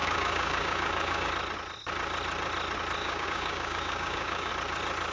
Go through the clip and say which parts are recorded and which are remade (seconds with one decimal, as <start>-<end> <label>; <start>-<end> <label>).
0.0-1.3 remade; 1.3-3.0 recorded; 3.0-4.5 remade; 4.5-5.1 recorded